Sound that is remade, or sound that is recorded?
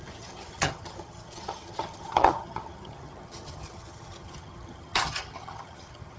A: remade